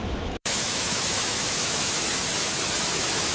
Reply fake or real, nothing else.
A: fake